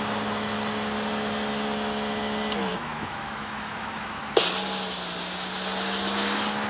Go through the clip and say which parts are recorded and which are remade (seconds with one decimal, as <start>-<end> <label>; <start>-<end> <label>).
0.0-2.7 recorded; 2.7-4.2 remade; 4.2-6.7 recorded